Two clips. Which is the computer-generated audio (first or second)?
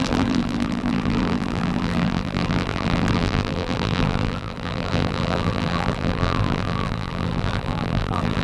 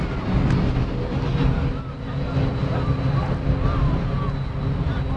first